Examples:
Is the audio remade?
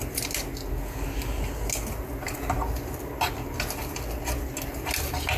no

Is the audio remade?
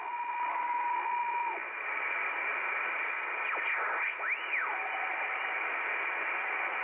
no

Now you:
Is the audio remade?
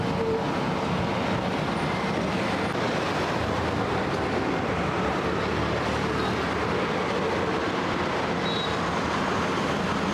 no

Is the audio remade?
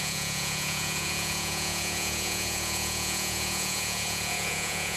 yes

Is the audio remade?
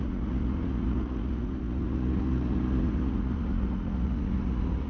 yes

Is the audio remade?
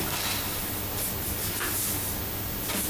no